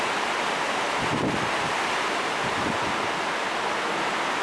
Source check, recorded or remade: recorded